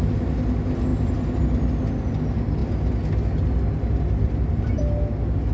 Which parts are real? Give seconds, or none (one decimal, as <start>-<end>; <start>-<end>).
0.0-5.5